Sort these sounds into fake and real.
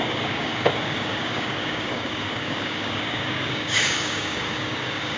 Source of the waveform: fake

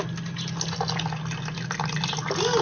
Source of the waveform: real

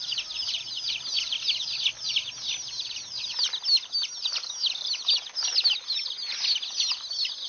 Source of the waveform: real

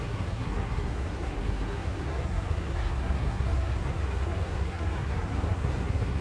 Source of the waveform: fake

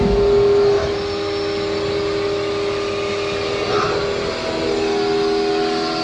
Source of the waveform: real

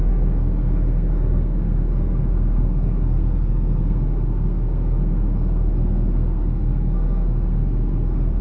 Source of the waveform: fake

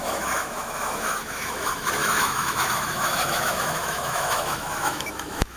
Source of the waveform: fake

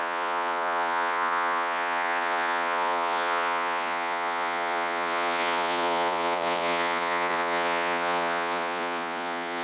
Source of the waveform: fake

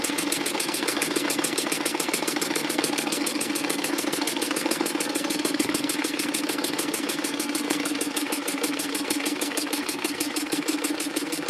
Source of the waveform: fake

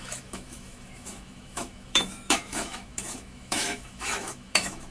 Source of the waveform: fake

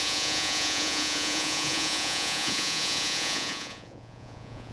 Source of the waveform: fake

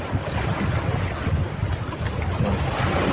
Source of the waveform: real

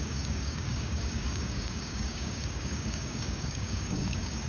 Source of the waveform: fake